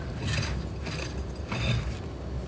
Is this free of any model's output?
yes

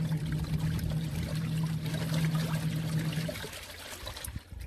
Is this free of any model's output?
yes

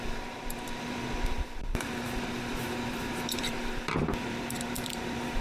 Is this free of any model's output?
no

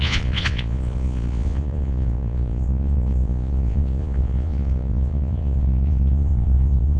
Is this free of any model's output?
no